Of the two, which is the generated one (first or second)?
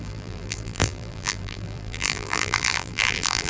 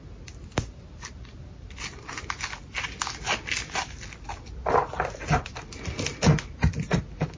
first